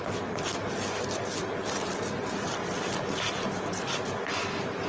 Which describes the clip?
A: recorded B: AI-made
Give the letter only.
A